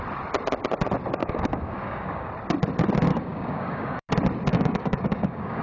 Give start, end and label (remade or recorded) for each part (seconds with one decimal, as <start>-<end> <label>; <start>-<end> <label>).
0.0-1.2 recorded; 1.2-2.3 remade; 2.3-3.1 recorded; 3.1-4.1 remade; 4.1-4.5 recorded; 4.5-5.6 remade